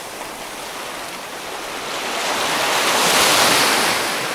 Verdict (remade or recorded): recorded